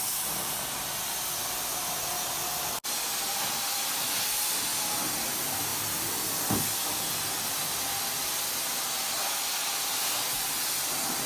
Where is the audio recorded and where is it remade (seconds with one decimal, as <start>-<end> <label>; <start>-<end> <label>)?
0.0-11.3 recorded